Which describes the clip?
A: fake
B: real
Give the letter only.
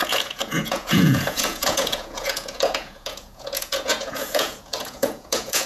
A